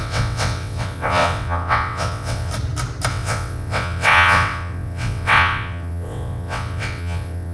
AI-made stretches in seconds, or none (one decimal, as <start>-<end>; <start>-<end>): 0.0-2.5; 3.1-7.5